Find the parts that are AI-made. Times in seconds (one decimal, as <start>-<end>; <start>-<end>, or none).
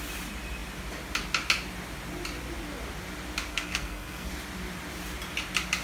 3.5-4.3